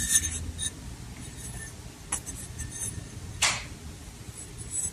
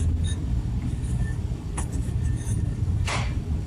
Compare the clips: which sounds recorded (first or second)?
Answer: first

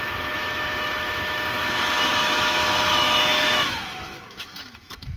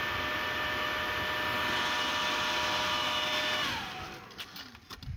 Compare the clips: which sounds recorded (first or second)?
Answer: second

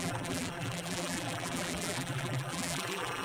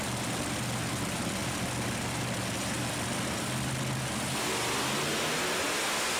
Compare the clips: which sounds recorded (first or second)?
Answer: second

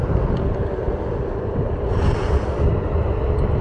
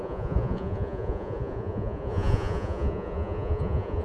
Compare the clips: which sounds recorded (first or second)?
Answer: first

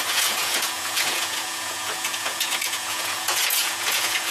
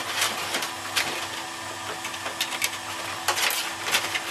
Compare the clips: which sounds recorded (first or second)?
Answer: second